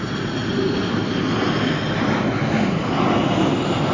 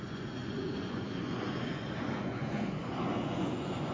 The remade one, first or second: second